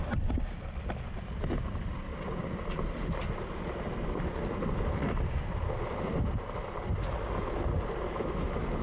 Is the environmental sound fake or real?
real